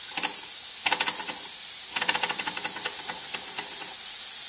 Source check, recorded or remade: recorded